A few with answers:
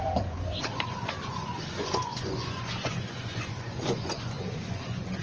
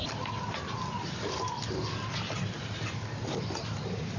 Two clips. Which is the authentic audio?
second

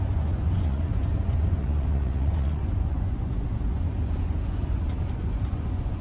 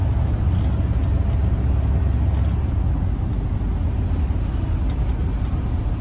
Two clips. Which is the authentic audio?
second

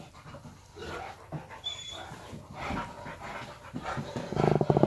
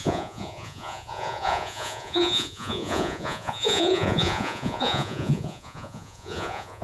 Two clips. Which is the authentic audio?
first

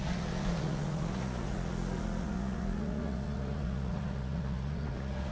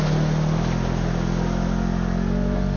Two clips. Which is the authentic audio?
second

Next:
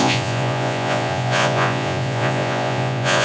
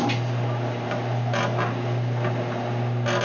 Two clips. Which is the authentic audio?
second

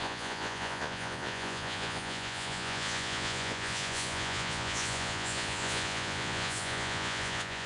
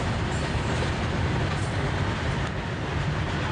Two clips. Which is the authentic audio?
second